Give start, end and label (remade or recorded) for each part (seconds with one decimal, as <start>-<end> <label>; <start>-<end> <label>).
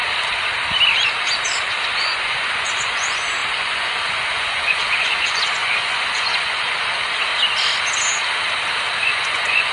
0.0-1.8 recorded; 1.8-7.3 remade; 7.3-9.0 recorded; 9.0-9.7 remade